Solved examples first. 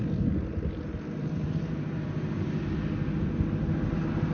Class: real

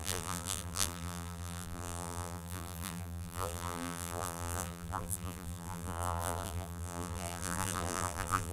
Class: fake